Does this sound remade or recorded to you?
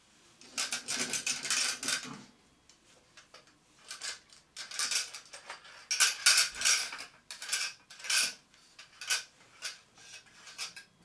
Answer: recorded